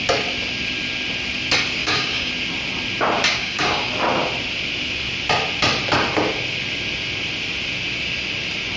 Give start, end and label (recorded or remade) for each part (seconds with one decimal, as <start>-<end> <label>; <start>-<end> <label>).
0.0-1.8 recorded; 1.8-2.3 remade; 2.3-3.3 recorded; 3.3-3.9 remade; 3.9-8.8 recorded